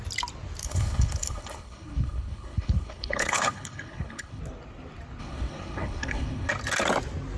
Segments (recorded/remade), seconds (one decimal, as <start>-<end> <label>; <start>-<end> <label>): 0.0-0.6 recorded; 0.6-4.4 remade; 4.4-5.2 recorded; 5.2-6.5 remade; 6.5-7.4 recorded